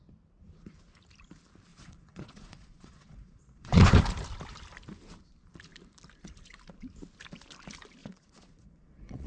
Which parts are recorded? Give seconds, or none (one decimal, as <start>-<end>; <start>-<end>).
0.0-1.7; 3.9-8.0